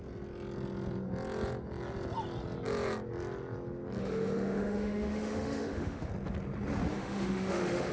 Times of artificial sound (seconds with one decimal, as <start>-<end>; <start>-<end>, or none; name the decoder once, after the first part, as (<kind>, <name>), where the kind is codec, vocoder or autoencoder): 4.0-6.1 (autoencoder, DAC-VAE); 7.0-7.9

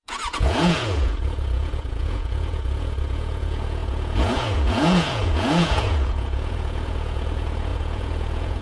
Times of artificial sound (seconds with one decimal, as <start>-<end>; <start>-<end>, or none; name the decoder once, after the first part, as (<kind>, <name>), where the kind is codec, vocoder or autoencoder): 0.0-8.6 (vocoder, Vocos)